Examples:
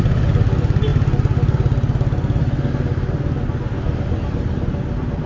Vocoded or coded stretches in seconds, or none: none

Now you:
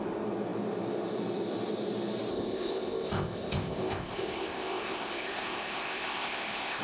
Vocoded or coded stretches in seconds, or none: 2.3-6.8 (codec, ZipCodec)